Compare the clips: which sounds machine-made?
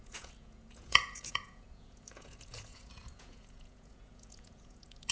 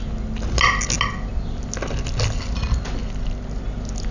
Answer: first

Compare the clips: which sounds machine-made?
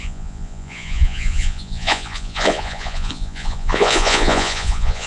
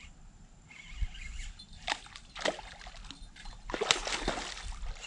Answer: first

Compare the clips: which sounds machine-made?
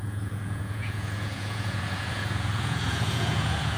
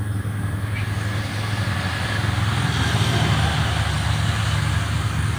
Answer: first